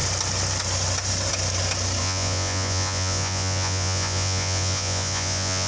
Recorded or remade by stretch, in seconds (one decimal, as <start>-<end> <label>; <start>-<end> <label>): 0.0-2.0 recorded; 2.0-5.7 remade